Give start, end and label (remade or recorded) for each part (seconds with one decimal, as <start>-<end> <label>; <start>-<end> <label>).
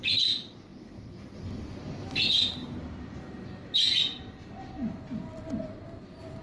0.0-6.4 recorded